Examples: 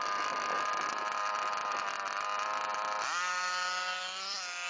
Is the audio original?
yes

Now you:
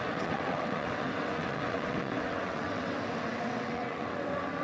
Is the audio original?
no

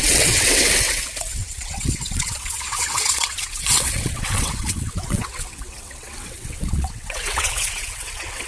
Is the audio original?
no